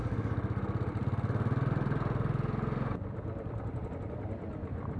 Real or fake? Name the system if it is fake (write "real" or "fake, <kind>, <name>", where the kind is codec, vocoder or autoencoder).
real